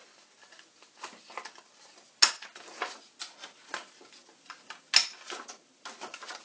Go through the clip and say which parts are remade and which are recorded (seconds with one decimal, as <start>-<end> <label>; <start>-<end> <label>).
0.0-6.4 recorded